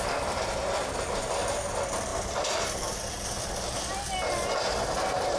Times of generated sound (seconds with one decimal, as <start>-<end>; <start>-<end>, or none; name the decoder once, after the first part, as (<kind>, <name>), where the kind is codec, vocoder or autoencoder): none